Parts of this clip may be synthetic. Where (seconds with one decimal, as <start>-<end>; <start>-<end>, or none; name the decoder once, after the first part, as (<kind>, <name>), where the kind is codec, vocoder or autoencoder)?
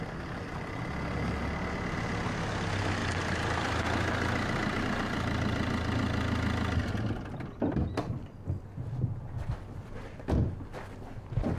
none